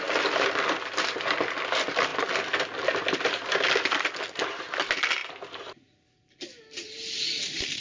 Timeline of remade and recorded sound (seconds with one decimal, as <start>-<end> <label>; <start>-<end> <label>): 0.0-7.8 recorded